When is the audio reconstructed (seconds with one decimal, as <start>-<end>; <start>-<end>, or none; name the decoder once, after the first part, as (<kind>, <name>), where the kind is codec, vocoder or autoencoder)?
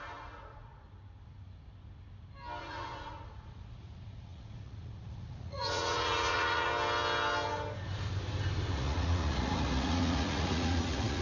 0.0-0.7 (vocoder, Vocos); 2.6-6.7; 8.7-11.2